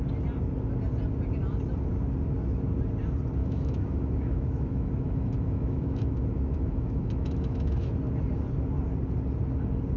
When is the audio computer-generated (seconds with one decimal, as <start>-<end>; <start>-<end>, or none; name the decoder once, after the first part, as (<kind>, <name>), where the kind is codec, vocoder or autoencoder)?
3.4-7.9 (autoencoder, DAC-VAE)